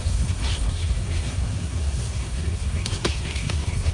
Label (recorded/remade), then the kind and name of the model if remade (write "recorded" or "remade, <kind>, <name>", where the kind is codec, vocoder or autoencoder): remade, codec, SNAC